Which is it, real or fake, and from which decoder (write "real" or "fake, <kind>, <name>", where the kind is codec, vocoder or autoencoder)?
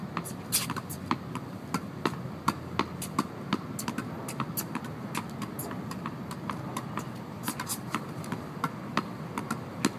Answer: real